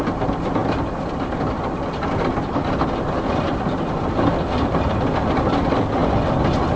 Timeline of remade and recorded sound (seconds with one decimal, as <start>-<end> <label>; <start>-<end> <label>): 0.0-6.8 recorded